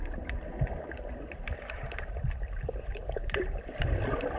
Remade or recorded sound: recorded